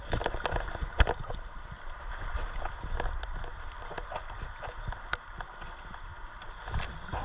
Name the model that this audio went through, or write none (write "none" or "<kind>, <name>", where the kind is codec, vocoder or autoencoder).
none